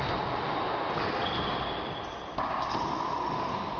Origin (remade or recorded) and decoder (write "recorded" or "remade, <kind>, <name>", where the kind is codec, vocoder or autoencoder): recorded